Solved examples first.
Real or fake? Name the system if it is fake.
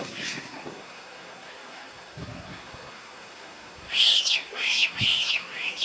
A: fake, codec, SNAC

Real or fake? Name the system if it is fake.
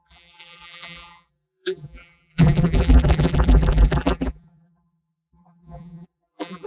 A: fake, vocoder, BigVGAN v2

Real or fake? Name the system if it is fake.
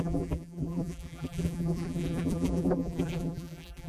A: fake, vocoder, BigVGAN v2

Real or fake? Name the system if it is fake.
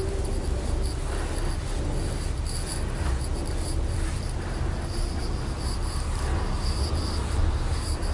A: real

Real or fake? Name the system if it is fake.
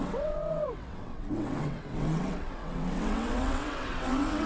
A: fake, vocoder, WaveNeXt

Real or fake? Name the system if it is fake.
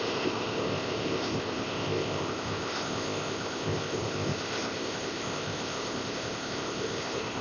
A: fake, codec, ZipCodec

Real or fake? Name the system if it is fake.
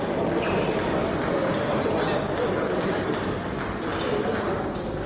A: fake, vocoder, BigVGAN v2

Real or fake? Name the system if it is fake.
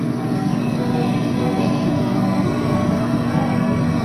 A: fake, codec, SNAC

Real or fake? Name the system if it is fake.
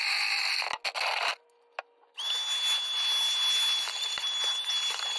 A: real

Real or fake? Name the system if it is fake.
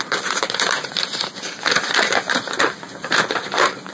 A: fake, vocoder, BigVGAN v2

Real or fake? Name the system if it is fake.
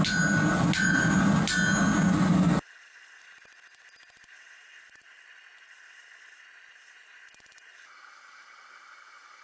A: real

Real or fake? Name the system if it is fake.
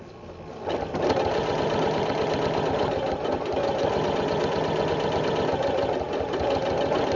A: real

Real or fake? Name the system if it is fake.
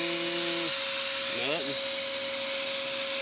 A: real